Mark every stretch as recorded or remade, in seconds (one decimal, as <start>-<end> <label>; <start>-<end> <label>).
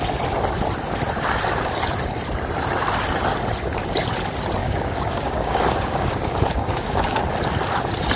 0.0-4.6 recorded; 4.6-7.2 remade; 7.2-8.2 recorded